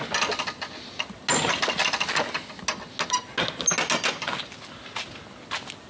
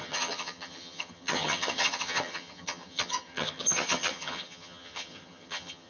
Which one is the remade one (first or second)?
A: second